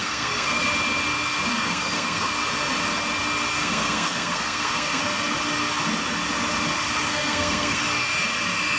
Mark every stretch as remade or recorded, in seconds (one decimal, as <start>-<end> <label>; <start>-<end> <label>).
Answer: 0.0-0.6 remade; 0.6-1.5 recorded; 1.5-2.3 remade; 2.3-3.6 recorded; 3.6-5.0 remade; 5.0-7.1 recorded; 7.1-7.8 remade; 7.8-8.8 recorded